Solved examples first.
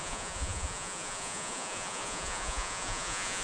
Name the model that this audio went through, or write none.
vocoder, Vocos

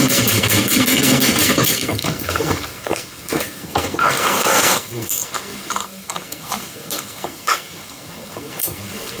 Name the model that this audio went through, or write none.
codec, SNAC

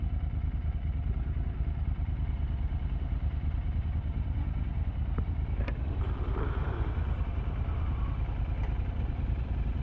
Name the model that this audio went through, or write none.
none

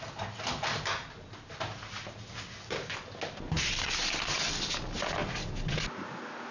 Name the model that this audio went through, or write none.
none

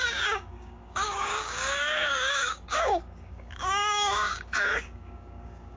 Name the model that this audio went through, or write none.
codec, DAC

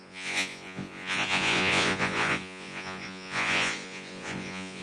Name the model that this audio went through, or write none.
vocoder, Vocos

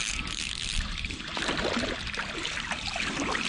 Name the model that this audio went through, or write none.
none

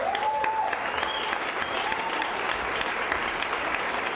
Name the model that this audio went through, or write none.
none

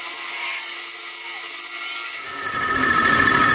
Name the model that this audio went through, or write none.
none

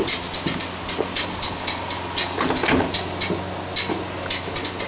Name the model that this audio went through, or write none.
none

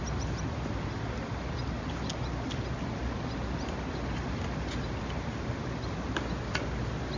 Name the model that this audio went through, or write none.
none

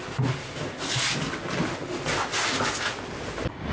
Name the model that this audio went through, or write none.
none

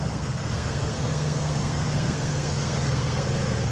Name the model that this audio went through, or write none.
codec, SNAC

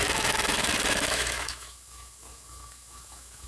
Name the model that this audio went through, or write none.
autoencoder, DAC-VAE